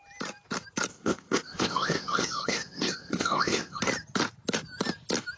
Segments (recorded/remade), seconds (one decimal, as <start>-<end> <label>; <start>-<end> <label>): 0.0-0.9 recorded; 0.9-3.8 remade; 3.8-5.4 recorded